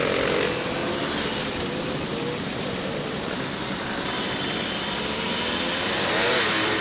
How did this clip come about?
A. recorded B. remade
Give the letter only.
A